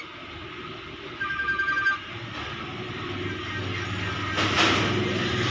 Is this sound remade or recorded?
recorded